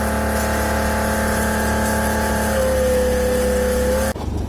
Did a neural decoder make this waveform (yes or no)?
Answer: no